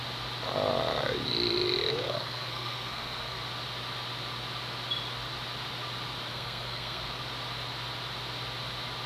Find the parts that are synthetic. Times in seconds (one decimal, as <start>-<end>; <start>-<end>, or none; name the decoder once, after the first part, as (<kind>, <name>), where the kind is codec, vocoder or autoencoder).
1.9-3.4 (codec, SNAC); 6.3-7.2